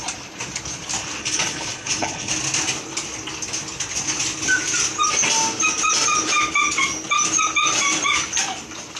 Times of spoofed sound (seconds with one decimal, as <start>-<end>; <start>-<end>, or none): 1.2-2.3